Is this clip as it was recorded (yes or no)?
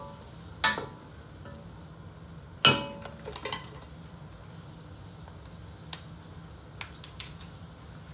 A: yes